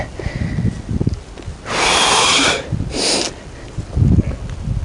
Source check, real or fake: real